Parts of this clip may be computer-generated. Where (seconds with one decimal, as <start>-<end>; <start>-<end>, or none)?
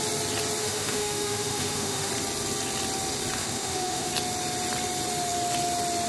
0.6-2.1; 3.4-4.1